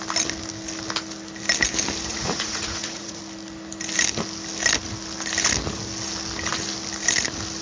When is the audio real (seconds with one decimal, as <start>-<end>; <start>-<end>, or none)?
0.0-2.1; 3.2-7.6